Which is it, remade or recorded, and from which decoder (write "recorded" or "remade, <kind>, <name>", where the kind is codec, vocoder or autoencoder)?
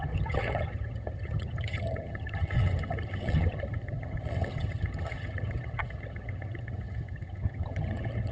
remade, vocoder, HiFi-GAN